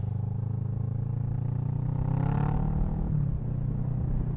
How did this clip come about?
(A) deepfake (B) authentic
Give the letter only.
B